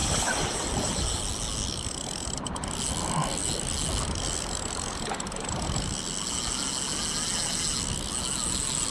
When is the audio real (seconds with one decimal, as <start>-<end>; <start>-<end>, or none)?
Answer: 1.3-8.9